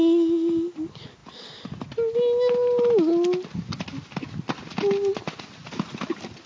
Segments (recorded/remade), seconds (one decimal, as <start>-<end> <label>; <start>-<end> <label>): 0.0-6.5 recorded